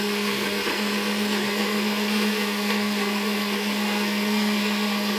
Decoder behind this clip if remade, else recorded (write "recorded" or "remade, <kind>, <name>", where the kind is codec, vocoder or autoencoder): remade, codec, SNAC